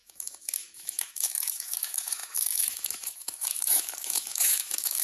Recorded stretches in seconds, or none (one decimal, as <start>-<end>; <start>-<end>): none